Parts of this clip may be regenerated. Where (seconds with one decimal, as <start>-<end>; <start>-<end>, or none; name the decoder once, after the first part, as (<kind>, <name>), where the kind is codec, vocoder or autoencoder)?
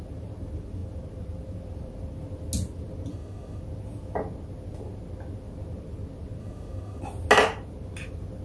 3.1-3.6 (autoencoder, DAC-VAE); 6.4-7.0